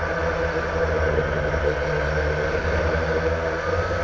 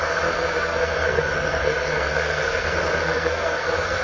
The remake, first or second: second